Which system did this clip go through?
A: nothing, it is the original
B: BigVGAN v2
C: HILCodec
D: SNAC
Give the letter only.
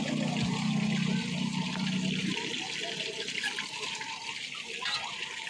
A